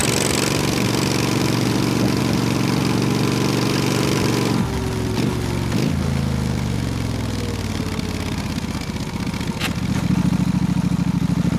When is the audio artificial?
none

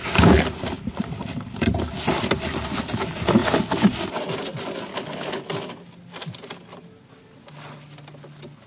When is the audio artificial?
4.9-5.4 (codec, HILCodec)

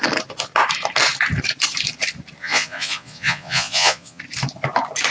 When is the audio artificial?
2.4-4.2 (vocoder, Vocos)

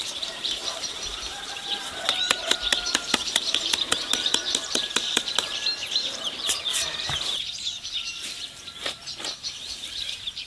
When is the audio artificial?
0.0-10.5 (vocoder, BigVGAN v2)

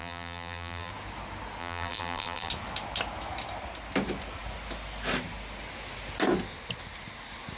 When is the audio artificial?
0.0-0.9 (vocoder, BigVGAN v2); 1.6-2.5

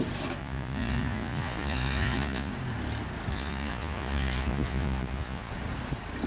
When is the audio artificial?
0.4-2.5 (vocoder, Vocos); 3.3-5.5

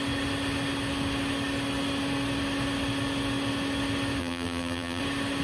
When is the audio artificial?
4.2-5.0 (vocoder, BigVGAN v2)